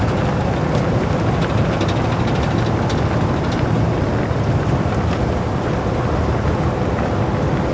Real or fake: real